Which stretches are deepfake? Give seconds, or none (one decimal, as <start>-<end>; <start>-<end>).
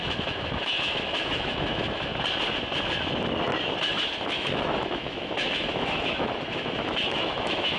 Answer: 0.0-2.1; 4.2-7.8